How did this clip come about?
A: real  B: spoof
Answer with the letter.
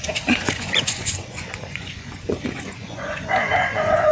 B